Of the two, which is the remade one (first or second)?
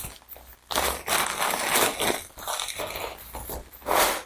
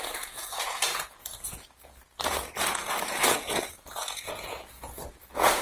second